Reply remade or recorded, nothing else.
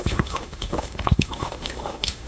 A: remade